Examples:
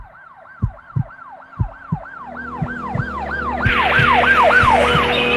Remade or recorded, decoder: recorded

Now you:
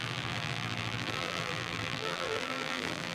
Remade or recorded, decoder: remade, vocoder, BigVGAN v2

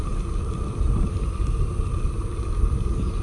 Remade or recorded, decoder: remade, vocoder, BigVGAN v2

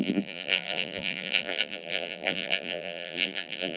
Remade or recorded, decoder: remade, vocoder, BigVGAN v2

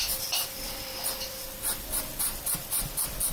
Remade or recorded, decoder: remade, vocoder, BigVGAN v2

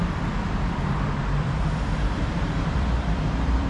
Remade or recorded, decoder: remade, vocoder, BigVGAN v2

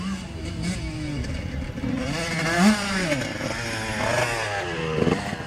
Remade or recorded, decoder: recorded